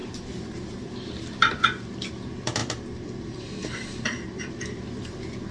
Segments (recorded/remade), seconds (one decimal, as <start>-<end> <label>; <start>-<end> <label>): 0.0-5.5 remade